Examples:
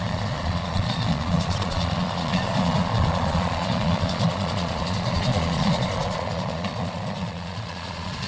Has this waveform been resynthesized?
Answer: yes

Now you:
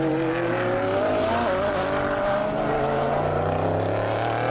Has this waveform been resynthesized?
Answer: no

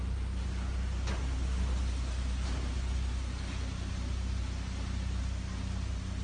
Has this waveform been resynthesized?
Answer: no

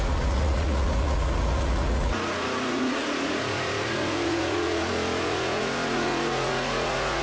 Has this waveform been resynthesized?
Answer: yes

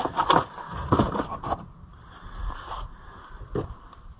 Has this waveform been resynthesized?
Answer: no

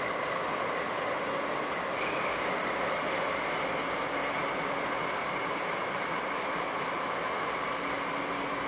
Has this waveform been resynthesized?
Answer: no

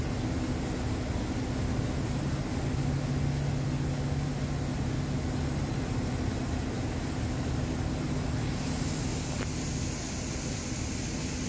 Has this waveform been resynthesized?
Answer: no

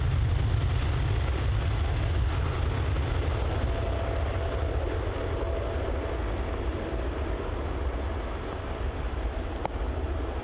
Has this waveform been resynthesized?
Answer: no